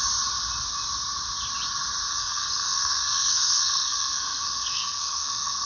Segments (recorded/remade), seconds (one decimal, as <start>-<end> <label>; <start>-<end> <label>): 0.0-2.1 recorded; 2.1-5.7 remade